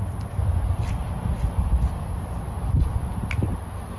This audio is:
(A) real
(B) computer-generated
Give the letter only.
A